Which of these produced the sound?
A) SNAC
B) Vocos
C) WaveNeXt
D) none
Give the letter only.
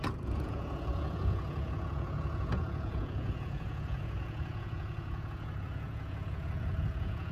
B